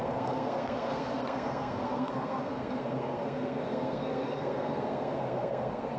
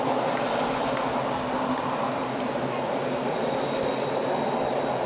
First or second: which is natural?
second